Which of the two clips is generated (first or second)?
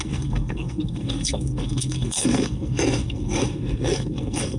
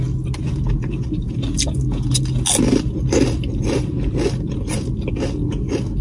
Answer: first